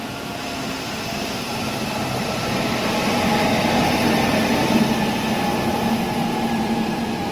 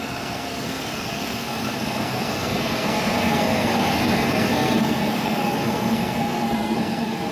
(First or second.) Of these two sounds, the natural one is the first